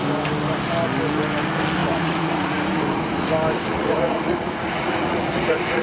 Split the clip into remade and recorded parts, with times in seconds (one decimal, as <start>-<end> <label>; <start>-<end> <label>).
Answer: 0.0-1.8 recorded; 1.8-3.3 remade; 3.3-3.7 recorded; 3.7-5.8 remade